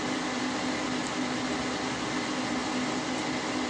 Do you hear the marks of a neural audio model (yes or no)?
no